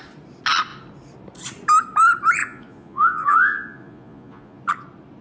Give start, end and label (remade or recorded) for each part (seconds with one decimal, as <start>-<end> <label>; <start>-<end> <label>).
0.0-2.4 recorded; 2.4-4.6 remade; 4.6-5.2 recorded